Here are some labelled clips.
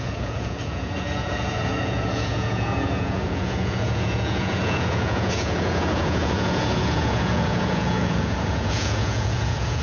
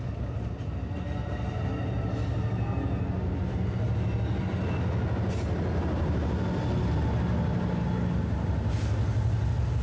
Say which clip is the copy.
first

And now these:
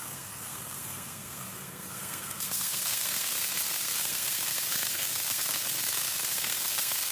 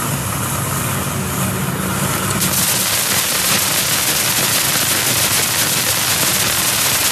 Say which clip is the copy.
first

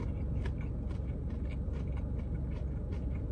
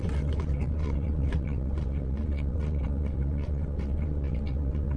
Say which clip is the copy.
second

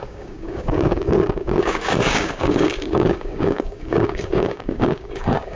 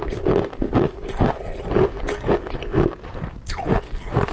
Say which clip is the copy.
first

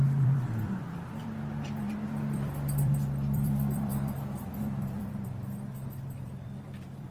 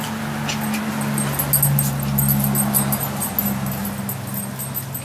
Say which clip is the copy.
first